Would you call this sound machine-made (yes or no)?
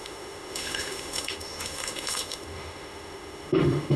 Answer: yes